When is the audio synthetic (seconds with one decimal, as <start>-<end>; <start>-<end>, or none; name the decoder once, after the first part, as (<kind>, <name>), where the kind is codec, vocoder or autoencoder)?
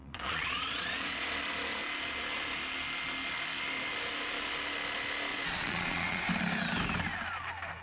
0.0-1.3 (vocoder, Vocos); 5.3-6.3